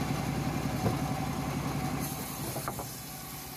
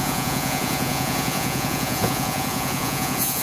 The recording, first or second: first